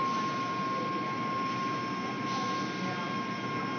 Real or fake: real